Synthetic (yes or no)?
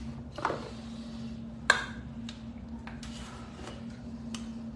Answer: no